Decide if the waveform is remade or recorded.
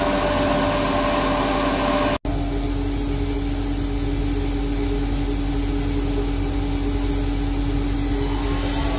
recorded